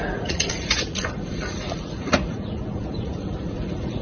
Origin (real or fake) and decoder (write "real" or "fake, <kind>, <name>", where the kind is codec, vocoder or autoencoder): fake, vocoder, Vocos